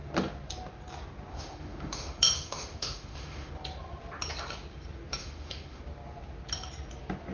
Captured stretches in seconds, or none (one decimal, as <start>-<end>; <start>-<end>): 0.0-1.3; 3.5-5.2; 5.8-7.3